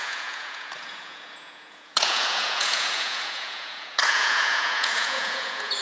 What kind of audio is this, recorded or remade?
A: remade